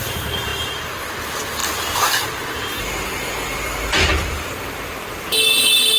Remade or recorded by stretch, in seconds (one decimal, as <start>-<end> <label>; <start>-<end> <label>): 0.0-1.6 recorded; 1.6-5.2 remade; 5.2-6.0 recorded